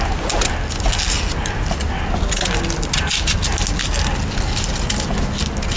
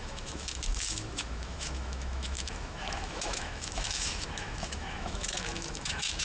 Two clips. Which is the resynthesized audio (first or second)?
second